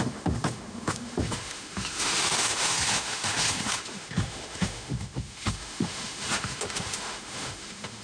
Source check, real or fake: fake